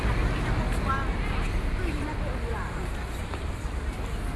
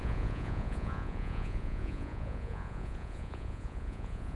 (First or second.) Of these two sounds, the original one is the first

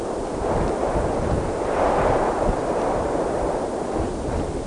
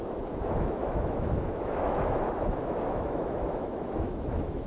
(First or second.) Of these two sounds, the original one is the first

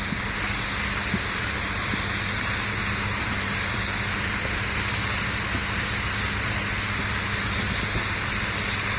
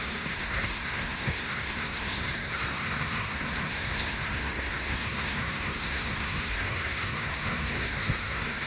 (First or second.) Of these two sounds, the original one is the first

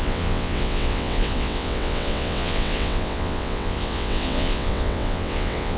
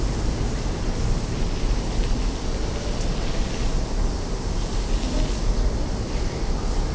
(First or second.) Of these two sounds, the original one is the second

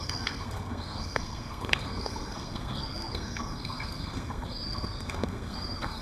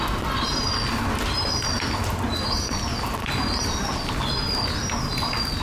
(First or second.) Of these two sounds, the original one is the second